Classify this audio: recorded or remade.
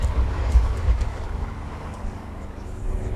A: remade